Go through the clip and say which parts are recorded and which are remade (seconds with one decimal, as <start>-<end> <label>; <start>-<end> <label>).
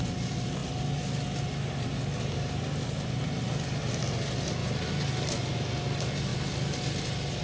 0.0-7.4 recorded